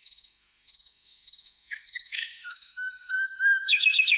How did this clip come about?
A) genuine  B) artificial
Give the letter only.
B